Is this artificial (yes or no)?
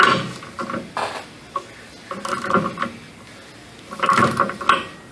no